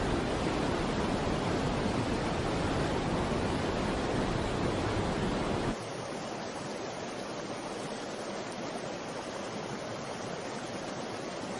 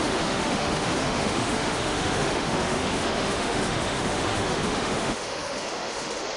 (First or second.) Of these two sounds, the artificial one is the second